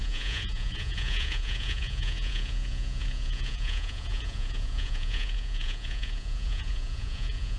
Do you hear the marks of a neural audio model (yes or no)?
yes